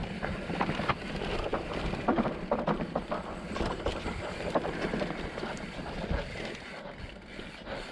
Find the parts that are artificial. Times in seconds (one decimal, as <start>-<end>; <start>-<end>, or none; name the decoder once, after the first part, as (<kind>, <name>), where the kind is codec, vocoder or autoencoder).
0.9-7.9 (vocoder, BigVGAN v2)